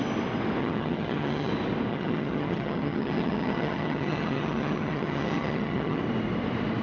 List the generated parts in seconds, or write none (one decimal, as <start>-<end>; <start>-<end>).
0.6-1.5; 1.9-6.0